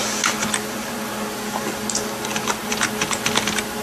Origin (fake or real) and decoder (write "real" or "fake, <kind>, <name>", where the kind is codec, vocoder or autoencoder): real